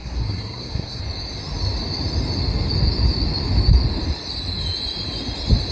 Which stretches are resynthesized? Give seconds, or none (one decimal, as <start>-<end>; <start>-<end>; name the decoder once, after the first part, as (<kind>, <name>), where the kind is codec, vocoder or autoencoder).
0.0-1.0 (codec, SNAC)